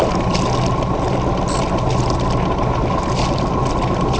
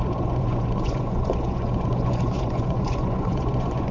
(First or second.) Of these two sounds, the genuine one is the first